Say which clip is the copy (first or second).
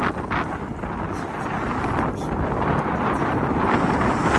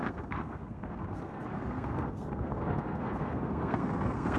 second